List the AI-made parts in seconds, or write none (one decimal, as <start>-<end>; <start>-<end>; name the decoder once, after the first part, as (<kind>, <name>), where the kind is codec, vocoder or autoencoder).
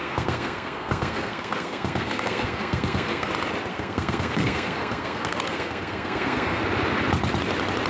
0.0-3.3 (codec, SNAC); 3.7-6.6